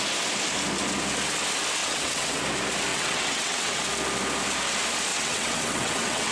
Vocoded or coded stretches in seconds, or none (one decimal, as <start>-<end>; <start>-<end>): 1.8-2.4; 2.9-3.8; 5.1-6.3